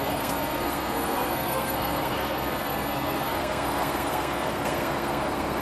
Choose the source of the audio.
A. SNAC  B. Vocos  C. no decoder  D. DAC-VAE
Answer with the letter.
A